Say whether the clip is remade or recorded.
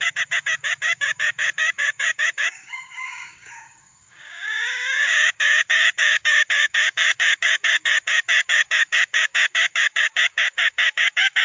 remade